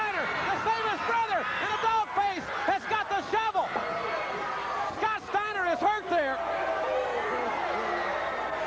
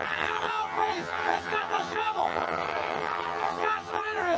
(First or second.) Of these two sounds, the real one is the first